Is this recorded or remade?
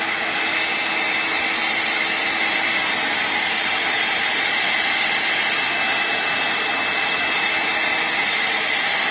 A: recorded